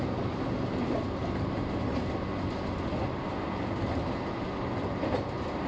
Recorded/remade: recorded